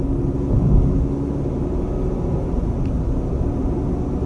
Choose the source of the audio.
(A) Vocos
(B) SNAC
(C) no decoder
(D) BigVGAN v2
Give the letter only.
C